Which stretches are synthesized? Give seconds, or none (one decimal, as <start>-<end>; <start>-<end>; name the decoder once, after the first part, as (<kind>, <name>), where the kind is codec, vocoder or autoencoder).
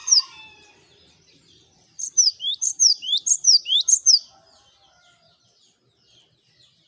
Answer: 0.0-4.1 (vocoder, BigVGAN v2)